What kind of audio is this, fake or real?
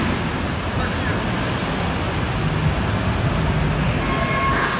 real